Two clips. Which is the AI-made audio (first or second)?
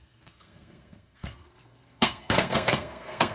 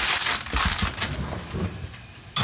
first